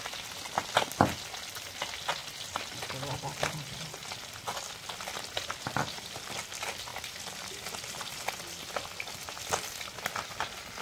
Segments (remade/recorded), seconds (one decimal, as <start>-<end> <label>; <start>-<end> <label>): 0.0-10.8 recorded